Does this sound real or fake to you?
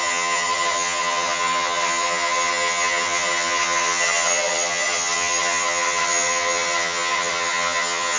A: fake